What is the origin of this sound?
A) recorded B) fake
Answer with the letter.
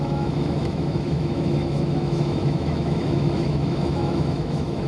B